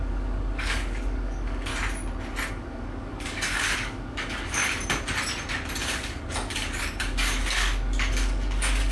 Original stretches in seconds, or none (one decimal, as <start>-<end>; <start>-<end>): 1.7-2.5; 4.6-5.8